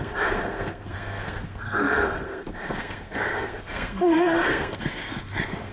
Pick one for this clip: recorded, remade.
remade